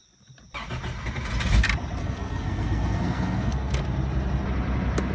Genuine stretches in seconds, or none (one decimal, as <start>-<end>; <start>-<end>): 0.0-2.0; 3.8-5.1